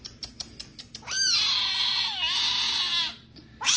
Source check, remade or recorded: recorded